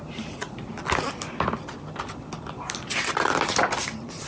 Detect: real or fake real